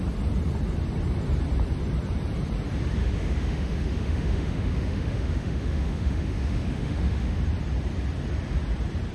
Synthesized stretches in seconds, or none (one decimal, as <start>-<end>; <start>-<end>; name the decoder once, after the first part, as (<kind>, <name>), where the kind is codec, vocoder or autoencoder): 3.0-7.4 (autoencoder, DAC-VAE)